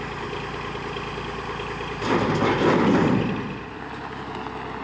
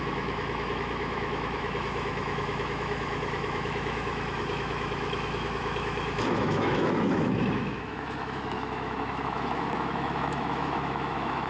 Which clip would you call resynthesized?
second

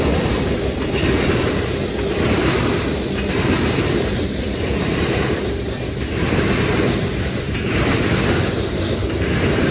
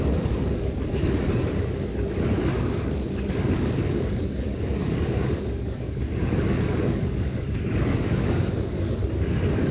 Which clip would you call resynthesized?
second